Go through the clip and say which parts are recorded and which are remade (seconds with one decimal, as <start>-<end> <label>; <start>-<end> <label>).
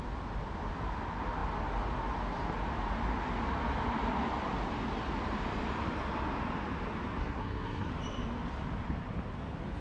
0.0-7.2 recorded; 7.2-7.9 remade; 7.9-9.8 recorded